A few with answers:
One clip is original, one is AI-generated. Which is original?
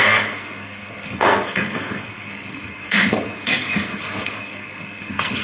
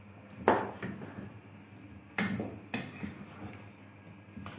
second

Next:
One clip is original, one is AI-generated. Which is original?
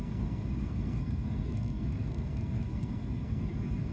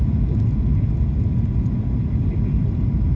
second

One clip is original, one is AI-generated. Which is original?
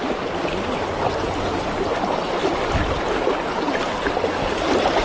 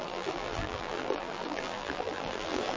first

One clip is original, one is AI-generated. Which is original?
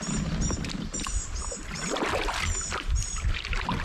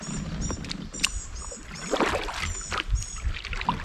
second